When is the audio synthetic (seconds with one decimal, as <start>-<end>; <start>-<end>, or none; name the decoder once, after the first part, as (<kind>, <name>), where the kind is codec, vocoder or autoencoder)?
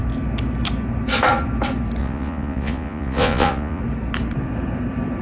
2.0-3.8 (vocoder, Vocos)